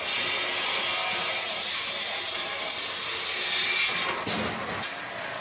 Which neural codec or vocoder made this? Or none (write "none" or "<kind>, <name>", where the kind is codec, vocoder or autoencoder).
none